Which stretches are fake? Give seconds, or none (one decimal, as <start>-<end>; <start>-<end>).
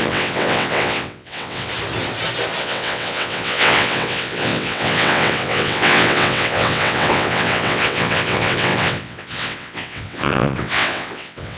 0.0-1.7; 2.6-11.6